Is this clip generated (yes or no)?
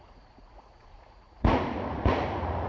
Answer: yes